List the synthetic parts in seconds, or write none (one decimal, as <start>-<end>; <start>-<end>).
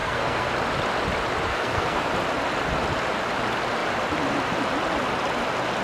0.0-0.5; 1.5-2.1